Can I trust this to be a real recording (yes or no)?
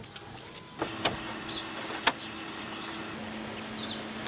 yes